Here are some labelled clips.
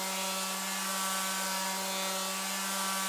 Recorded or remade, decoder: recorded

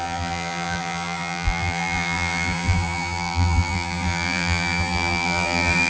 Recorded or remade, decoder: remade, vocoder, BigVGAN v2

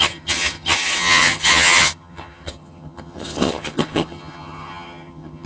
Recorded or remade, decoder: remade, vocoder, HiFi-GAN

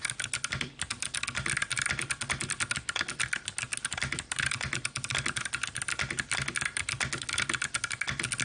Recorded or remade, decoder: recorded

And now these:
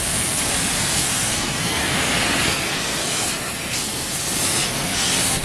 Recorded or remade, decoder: remade, codec, SNAC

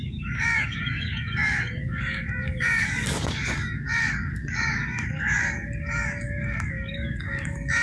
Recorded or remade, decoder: remade, codec, DAC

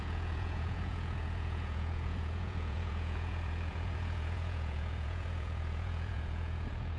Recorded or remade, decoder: remade, vocoder, Vocos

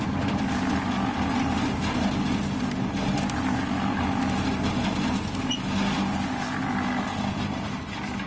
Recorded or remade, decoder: recorded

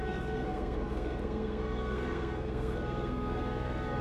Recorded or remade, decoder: remade, codec, SNAC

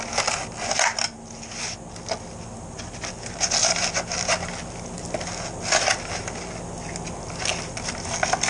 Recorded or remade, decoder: recorded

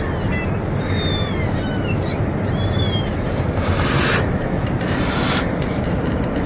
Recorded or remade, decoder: recorded